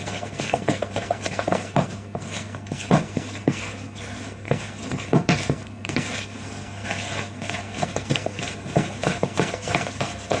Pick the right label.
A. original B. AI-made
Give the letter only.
B